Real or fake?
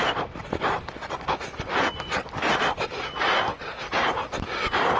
real